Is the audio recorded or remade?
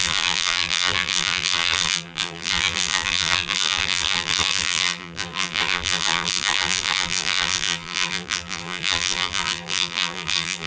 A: remade